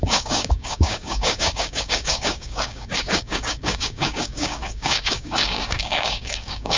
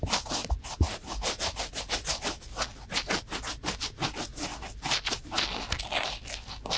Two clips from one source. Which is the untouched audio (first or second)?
second